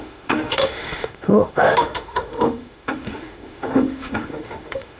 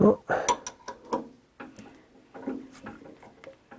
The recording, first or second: second